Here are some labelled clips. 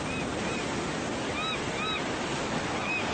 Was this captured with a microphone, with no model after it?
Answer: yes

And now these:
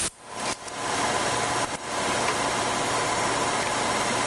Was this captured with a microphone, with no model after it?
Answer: no